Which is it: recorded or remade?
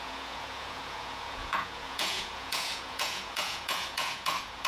remade